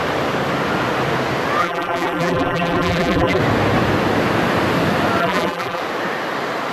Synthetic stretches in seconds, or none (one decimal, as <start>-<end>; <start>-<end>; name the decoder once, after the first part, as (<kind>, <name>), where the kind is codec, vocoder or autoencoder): 1.6-3.4 (vocoder, BigVGAN v2); 5.2-5.8